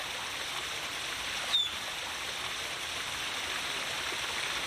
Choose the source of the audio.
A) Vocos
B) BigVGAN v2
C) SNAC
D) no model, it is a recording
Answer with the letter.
D